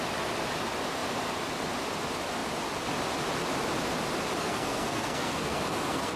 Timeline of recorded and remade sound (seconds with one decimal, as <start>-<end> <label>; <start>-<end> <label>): 0.0-4.4 recorded; 4.4-6.2 remade